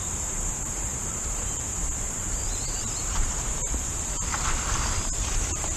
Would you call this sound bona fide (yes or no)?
no